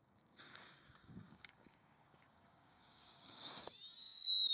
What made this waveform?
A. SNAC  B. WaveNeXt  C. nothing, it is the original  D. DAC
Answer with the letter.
D